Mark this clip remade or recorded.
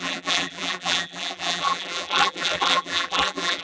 remade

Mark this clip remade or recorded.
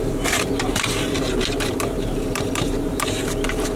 remade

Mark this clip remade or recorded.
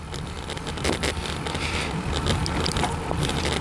recorded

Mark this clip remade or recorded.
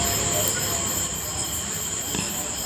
remade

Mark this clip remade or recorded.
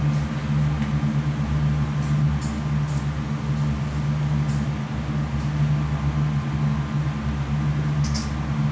recorded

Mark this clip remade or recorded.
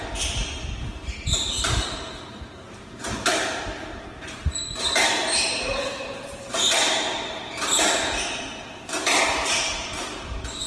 remade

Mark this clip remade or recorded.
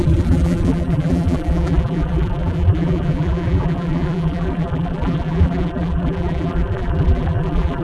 remade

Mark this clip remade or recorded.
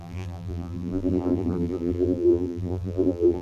remade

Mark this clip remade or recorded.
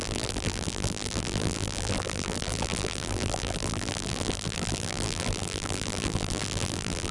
remade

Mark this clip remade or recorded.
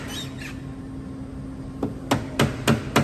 recorded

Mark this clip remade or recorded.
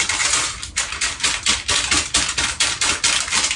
recorded